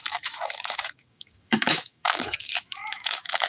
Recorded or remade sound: remade